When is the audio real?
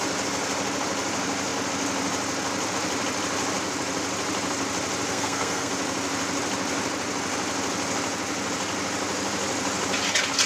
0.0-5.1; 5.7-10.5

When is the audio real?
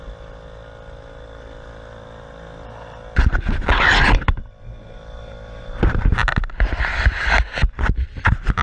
0.0-8.6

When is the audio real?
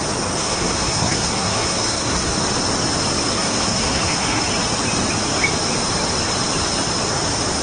0.0-0.4; 2.3-3.3; 4.4-7.6